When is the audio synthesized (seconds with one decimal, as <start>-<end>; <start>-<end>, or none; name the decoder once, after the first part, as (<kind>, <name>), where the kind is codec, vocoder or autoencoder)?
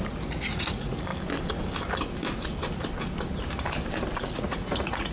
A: 0.0-1.1 (vocoder, Vocos); 4.2-5.1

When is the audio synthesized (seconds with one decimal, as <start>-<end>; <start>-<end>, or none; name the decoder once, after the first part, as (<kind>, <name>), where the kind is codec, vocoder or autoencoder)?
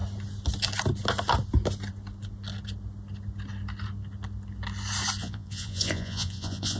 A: 5.2-6.8 (vocoder, Vocos)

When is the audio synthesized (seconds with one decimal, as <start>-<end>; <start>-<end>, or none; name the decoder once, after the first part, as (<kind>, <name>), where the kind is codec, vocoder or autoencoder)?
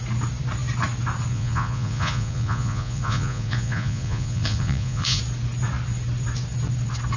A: 1.3-5.2 (vocoder, Vocos)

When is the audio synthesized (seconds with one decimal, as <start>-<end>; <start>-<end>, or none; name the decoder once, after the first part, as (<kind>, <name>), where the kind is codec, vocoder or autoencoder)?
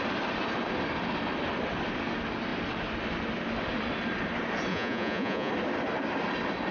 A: 4.7-5.5 (vocoder, Vocos)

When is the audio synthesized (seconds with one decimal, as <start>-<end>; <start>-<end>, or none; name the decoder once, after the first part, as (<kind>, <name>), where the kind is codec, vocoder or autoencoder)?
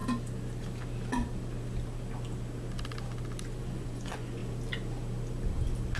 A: 3.6-4.4 (vocoder, Vocos)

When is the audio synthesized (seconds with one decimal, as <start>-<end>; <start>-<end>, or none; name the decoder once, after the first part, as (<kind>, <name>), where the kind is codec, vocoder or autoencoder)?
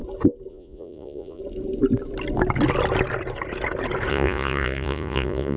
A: 0.5-1.4 (vocoder, Vocos); 4.1-5.6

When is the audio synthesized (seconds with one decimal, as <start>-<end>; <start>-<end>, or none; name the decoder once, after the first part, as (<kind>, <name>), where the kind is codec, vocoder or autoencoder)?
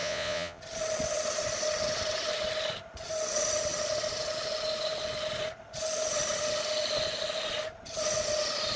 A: 0.0-0.6 (vocoder, Vocos)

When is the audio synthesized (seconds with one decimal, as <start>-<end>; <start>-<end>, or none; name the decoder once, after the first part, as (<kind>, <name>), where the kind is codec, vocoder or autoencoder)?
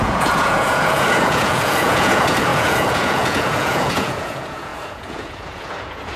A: 0.0-6.2 (vocoder, Vocos)